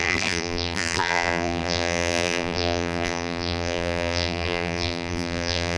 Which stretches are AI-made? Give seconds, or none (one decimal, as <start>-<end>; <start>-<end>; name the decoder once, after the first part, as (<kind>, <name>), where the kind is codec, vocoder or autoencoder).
0.0-5.8 (vocoder, BigVGAN v2)